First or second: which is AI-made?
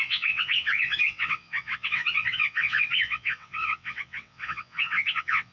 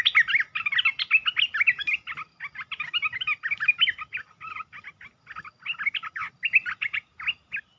first